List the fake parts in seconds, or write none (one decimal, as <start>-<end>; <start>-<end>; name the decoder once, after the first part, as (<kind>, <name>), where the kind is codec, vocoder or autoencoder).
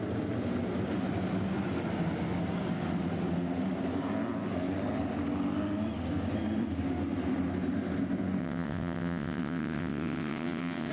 8.4-10.9 (vocoder, WaveNeXt)